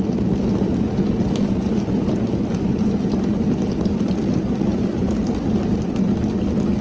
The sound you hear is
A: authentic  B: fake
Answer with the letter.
A